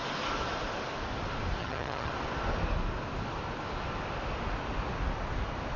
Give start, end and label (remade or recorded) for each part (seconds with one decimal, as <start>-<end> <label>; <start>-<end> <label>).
0.0-1.6 recorded; 1.6-2.1 remade; 2.1-5.8 recorded